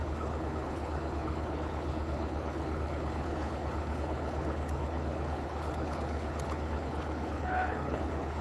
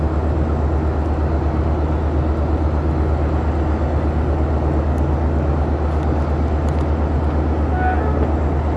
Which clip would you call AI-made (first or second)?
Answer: first